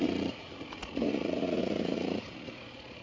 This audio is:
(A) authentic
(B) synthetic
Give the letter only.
B